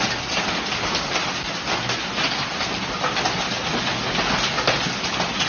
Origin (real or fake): real